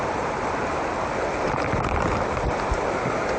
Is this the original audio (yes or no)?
yes